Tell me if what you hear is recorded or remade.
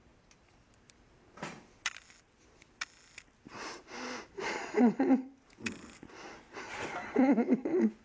recorded